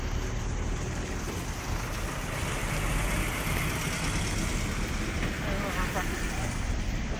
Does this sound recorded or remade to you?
recorded